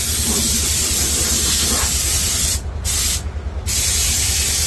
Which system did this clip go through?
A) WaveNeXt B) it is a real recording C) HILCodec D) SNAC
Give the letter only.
B